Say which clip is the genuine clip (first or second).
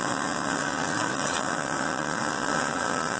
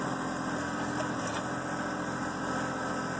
second